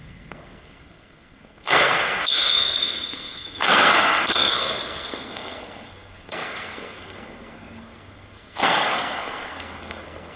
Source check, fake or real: fake